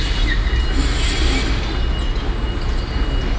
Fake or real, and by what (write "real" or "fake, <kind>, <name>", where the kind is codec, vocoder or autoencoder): real